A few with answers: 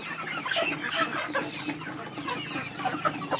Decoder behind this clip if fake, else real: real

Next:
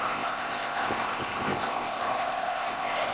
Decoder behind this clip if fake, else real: fake, codec, ZipCodec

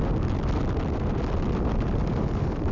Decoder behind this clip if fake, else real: fake, vocoder, BigVGAN v2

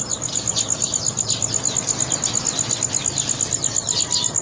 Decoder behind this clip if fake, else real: real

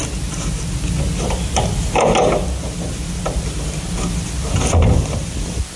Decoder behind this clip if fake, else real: real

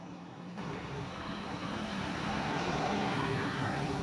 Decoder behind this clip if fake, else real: fake, codec, SNAC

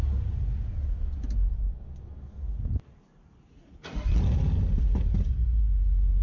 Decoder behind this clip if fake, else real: real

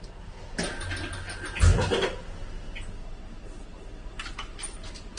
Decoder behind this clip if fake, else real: real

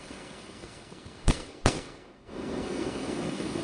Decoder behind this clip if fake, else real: fake, codec, SNAC